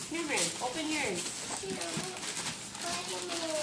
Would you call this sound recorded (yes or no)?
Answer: yes